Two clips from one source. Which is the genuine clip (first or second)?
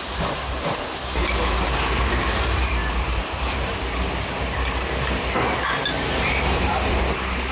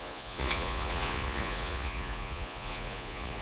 first